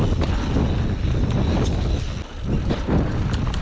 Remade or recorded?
recorded